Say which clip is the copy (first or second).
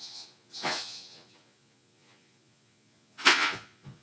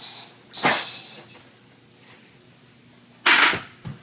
first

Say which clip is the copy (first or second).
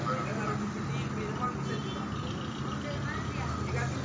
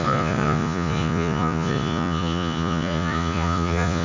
second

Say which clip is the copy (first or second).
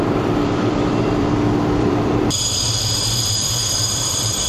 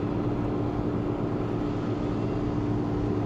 first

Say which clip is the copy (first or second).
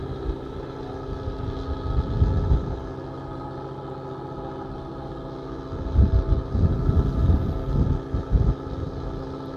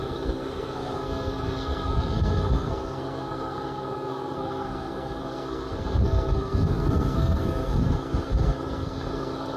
second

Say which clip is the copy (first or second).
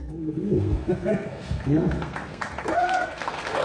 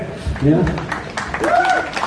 first